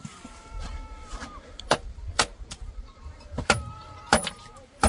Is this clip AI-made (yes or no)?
yes